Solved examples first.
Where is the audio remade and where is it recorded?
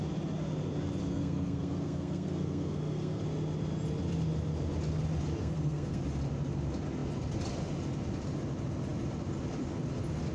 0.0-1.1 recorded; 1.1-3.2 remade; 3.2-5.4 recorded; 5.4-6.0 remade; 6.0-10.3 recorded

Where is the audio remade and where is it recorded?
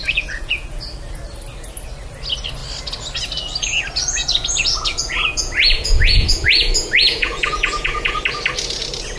0.0-0.8 remade; 0.8-4.0 recorded; 4.0-8.2 remade; 8.2-9.2 recorded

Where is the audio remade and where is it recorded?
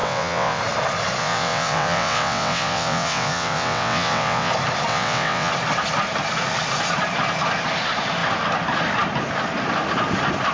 0.0-0.6 remade; 0.6-1.2 recorded; 1.2-4.5 remade; 4.5-4.9 recorded; 4.9-5.5 remade; 5.5-10.5 recorded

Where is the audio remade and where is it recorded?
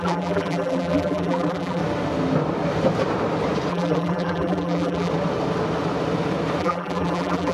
0.0-1.8 remade; 1.8-3.7 recorded; 3.7-5.1 remade; 5.1-6.6 recorded; 6.6-7.5 remade